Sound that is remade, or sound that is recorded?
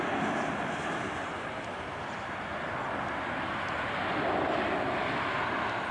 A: recorded